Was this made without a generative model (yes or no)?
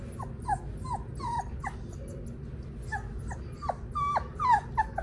yes